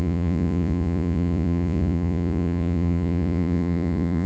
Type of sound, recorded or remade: remade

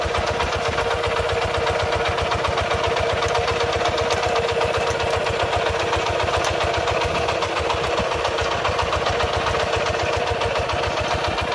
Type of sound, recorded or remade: recorded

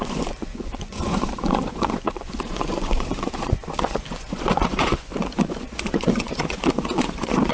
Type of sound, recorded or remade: remade